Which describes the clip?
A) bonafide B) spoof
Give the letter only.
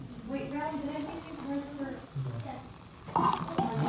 A